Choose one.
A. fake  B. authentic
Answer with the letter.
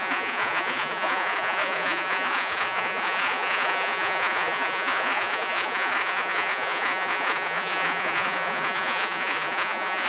A